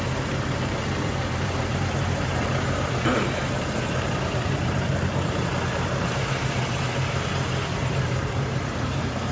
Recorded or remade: remade